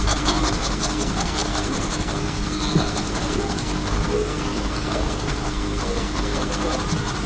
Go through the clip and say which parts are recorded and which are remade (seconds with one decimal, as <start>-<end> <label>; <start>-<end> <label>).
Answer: 0.0-6.7 remade; 6.7-7.3 recorded